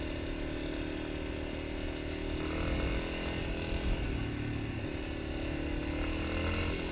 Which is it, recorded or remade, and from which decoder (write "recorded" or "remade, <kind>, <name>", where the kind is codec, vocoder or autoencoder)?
recorded